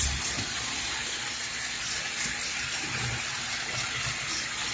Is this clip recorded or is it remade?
recorded